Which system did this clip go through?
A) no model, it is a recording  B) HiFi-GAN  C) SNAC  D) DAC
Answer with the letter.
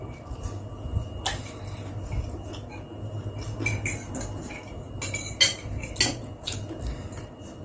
A